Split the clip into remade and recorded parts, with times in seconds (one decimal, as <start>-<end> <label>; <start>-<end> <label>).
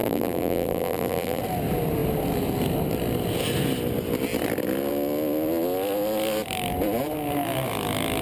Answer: 0.0-1.4 remade; 1.4-8.2 recorded